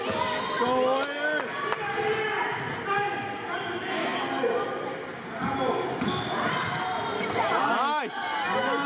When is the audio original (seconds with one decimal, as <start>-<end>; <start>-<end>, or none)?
0.0-8.9

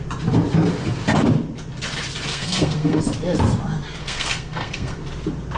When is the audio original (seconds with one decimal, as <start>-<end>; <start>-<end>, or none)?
0.0-2.3; 3.0-4.0; 5.0-5.6

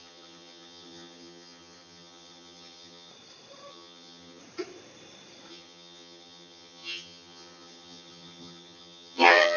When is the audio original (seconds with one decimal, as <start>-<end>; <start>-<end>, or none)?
3.1-3.7; 4.4-5.5

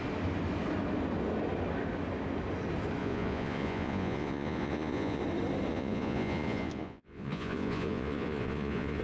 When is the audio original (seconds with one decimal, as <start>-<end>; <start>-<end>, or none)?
0.0-3.0; 5.2-5.7

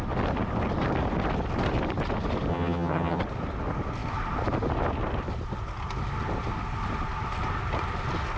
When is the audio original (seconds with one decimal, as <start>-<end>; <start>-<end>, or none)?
0.0-2.5; 3.2-8.4

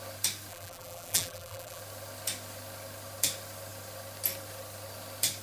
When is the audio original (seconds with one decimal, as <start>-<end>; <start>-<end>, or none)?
0.0-0.5; 1.8-5.4